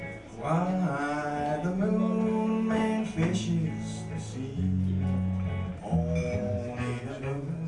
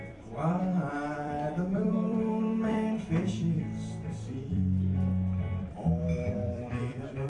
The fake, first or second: second